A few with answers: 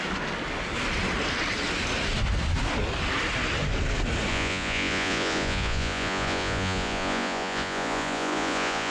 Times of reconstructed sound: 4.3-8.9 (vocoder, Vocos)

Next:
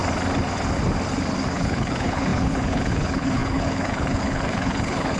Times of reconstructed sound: 1.5-5.2 (codec, HILCodec)

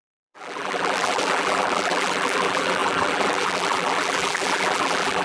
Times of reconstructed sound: 0.0-5.2 (vocoder, BigVGAN v2)